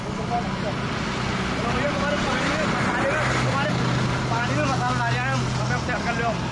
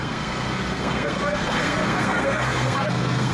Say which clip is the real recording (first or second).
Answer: first